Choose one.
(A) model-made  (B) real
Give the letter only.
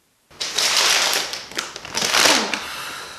B